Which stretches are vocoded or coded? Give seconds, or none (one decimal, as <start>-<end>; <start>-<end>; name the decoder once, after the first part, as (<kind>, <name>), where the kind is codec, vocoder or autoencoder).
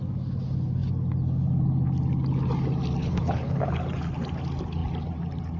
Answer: 3.0-3.7 (codec, HILCodec)